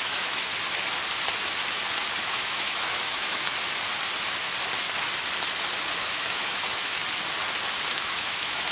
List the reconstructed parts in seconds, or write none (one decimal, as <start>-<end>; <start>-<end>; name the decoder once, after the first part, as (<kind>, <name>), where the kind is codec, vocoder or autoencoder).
0.0-0.5 (autoencoder, DAC-VAE); 2.2-3.5; 6.0-7.0; 7.9-8.7